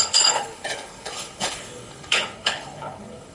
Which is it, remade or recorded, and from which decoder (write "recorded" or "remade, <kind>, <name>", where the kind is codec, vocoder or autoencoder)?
remade, codec, HILCodec